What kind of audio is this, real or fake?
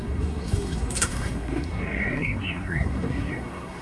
fake